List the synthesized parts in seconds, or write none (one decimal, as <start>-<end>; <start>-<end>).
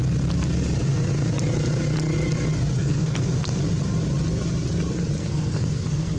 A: 2.8-3.6; 5.2-6.2